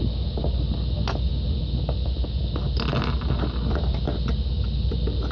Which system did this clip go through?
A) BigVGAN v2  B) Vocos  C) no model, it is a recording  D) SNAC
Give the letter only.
C